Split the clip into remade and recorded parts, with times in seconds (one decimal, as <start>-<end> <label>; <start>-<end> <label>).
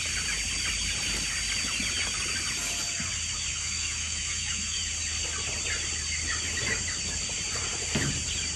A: 0.0-3.5 recorded; 3.5-4.8 remade; 4.8-8.6 recorded